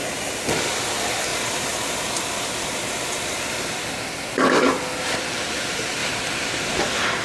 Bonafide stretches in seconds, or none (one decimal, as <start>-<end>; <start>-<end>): 0.0-1.3; 3.9-6.0; 6.8-7.2